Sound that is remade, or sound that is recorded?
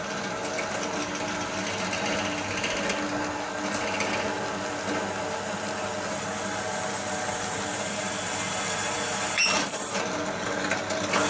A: recorded